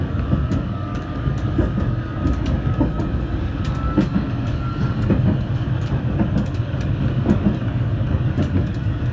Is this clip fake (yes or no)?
yes